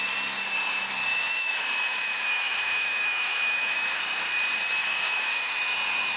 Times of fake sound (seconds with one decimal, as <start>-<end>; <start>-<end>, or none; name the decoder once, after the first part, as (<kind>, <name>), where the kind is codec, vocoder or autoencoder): 1.1-4.0 (autoencoder, DAC-VAE); 4.8-5.5